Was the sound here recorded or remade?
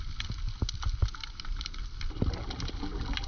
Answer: recorded